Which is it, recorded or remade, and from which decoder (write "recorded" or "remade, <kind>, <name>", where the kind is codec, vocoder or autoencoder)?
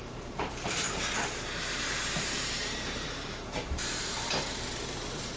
remade, vocoder, BigVGAN v2